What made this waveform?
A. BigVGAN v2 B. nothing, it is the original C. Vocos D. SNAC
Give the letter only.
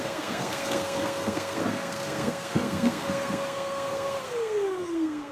D